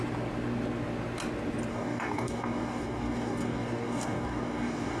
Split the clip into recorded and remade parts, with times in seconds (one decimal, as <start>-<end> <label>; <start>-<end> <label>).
0.0-1.7 recorded; 1.7-5.0 remade